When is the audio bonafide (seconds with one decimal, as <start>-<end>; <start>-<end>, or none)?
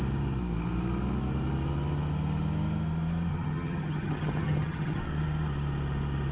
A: 0.0-3.3; 5.0-6.3